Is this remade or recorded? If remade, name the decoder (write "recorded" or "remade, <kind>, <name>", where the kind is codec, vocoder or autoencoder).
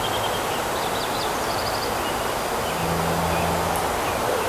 recorded